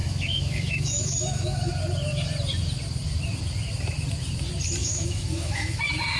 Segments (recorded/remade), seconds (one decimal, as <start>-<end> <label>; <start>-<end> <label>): 0.0-1.7 remade; 1.7-4.8 recorded; 4.8-5.8 remade; 5.8-6.2 recorded